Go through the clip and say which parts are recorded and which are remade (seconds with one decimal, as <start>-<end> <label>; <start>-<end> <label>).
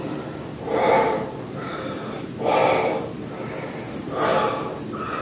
0.0-5.2 recorded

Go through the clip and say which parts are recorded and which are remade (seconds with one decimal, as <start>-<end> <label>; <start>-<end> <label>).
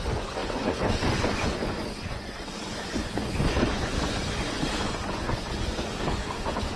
0.0-6.8 remade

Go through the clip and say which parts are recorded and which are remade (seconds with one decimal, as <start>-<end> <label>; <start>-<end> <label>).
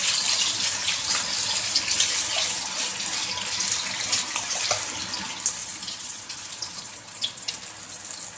0.0-5.6 recorded; 5.6-7.5 remade; 7.5-8.4 recorded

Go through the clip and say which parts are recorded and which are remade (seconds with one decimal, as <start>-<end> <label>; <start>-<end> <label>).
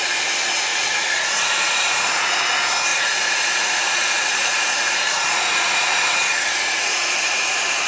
0.0-0.7 recorded; 0.7-2.3 remade; 2.3-2.9 recorded; 2.9-7.9 remade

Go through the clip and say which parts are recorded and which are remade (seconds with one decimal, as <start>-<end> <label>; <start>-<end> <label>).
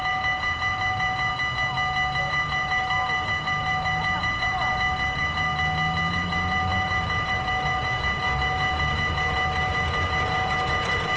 0.0-1.3 remade; 1.3-2.2 recorded; 2.2-5.5 remade; 5.5-6.1 recorded; 6.1-11.2 remade